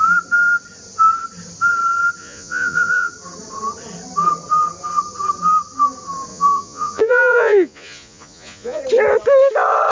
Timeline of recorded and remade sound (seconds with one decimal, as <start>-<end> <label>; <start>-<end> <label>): 0.0-2.2 recorded; 2.2-3.1 remade; 3.1-6.3 recorded; 6.3-8.8 remade; 8.8-9.9 recorded